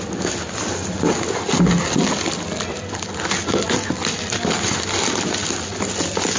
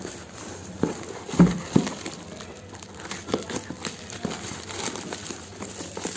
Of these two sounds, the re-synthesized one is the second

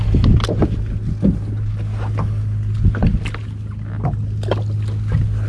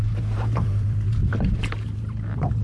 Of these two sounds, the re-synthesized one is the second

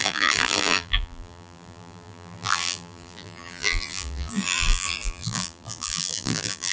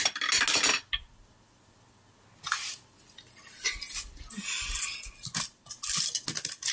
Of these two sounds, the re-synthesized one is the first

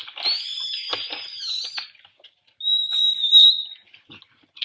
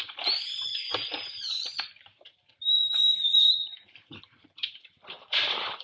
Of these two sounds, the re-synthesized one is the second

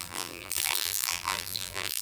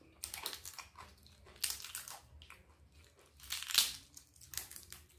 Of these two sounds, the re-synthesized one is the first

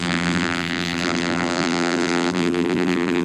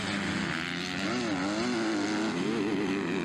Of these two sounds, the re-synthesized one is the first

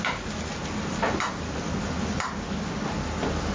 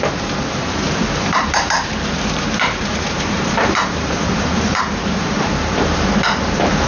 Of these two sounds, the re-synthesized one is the second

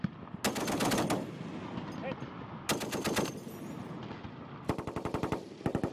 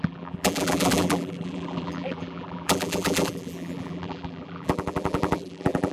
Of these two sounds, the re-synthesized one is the second